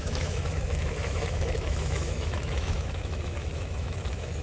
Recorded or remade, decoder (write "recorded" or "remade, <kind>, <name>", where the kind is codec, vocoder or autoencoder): remade, autoencoder, DAC-VAE